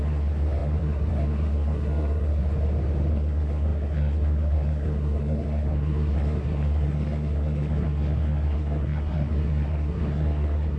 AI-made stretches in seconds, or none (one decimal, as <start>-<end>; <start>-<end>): 0.0-2.4; 3.1-10.8